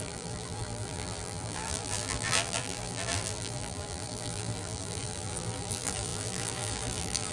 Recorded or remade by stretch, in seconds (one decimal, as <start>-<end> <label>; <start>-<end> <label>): 0.0-7.3 remade